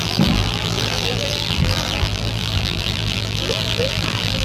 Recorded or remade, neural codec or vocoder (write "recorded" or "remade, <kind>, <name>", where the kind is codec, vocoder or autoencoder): remade, vocoder, BigVGAN v2